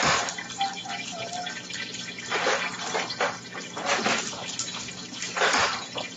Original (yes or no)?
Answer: yes